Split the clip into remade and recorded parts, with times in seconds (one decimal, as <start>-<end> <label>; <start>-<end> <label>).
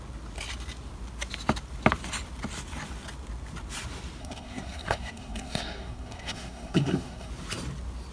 0.0-4.2 recorded; 4.2-7.3 remade; 7.3-8.1 recorded